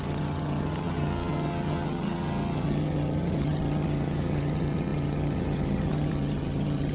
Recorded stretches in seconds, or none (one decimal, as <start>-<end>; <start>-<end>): none